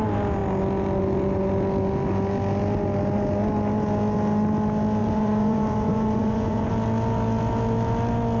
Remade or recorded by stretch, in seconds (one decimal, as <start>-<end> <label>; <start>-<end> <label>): 0.0-5.0 recorded; 5.0-6.7 remade; 6.7-8.4 recorded